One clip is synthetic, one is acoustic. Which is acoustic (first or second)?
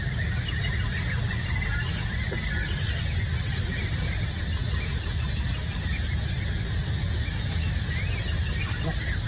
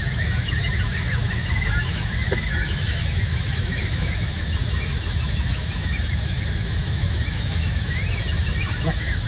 first